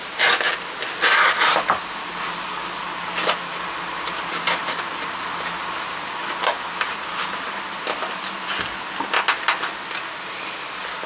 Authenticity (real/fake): real